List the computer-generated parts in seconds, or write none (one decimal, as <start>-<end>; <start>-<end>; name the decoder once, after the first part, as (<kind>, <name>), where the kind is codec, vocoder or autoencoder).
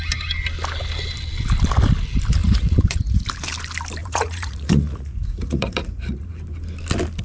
2.4-3.2 (vocoder, Vocos); 4.0-6.3